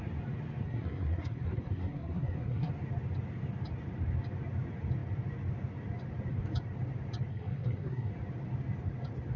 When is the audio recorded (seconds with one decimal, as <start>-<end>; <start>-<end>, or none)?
0.0-0.6; 2.7-7.3; 8.1-9.4